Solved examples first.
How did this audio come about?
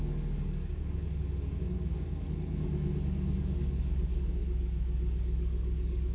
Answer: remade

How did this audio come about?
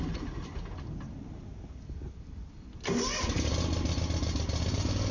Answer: recorded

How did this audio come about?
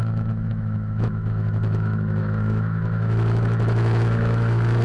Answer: remade